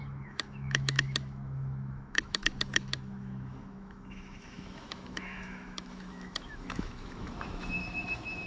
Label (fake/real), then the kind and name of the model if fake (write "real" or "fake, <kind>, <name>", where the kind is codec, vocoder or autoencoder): fake, autoencoder, DAC-VAE